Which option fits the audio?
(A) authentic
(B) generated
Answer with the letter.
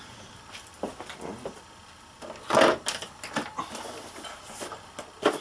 A